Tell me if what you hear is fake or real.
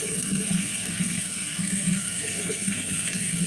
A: fake